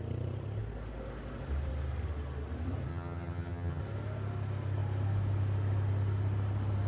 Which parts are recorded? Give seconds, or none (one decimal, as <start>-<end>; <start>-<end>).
0.0-2.9; 3.8-6.9